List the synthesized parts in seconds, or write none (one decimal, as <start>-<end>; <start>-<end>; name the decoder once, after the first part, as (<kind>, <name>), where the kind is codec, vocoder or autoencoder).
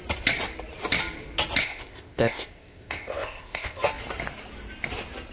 1.6-3.8 (codec, ZipCodec)